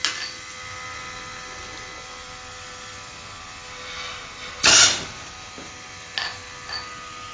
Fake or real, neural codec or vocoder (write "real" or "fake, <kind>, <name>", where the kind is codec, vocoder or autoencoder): real